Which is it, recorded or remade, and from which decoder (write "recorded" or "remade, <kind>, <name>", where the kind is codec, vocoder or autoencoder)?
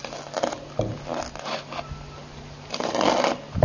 recorded